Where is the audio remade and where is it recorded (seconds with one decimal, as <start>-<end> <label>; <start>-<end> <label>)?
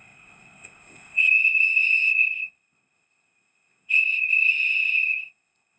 0.0-5.8 remade